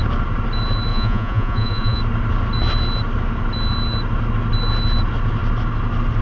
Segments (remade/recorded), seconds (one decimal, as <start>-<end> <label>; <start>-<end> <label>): 0.0-0.9 recorded; 0.9-2.0 remade; 2.0-6.2 recorded